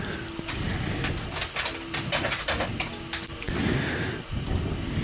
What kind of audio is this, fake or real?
real